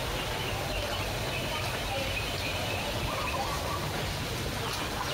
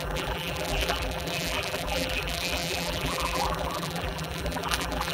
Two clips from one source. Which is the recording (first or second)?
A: first